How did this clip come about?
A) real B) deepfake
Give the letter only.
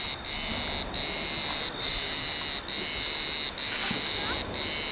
A